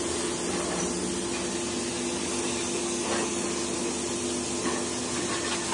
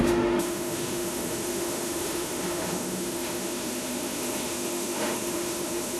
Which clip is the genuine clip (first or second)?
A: first